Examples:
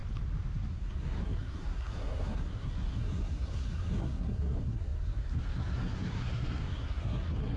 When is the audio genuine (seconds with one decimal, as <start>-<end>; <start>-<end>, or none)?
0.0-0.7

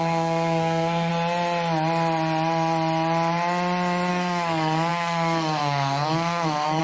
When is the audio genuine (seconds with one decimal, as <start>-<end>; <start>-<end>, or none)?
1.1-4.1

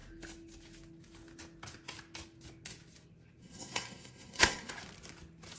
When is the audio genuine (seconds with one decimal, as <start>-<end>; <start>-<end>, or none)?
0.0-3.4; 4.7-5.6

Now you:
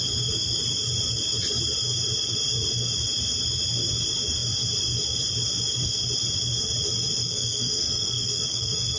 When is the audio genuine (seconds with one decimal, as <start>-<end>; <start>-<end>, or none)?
0.0-7.2

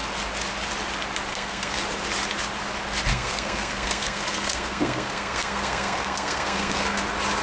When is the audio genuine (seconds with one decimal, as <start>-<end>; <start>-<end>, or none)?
0.0-1.3; 1.8-3.1; 7.0-7.4

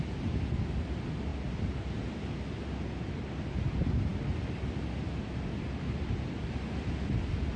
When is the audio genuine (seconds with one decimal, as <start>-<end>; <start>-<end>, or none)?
0.0-7.6

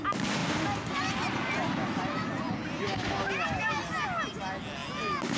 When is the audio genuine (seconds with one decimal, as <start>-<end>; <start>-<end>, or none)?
0.0-5.4

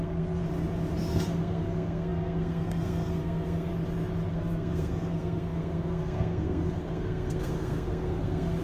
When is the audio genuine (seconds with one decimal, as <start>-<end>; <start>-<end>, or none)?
0.4-1.1; 3.7-4.3